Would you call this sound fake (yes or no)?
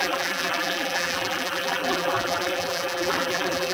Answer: yes